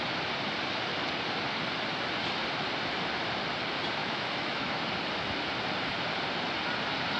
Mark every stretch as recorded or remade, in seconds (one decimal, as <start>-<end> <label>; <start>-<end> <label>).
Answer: 0.0-4.0 recorded; 4.0-4.8 remade; 4.8-7.2 recorded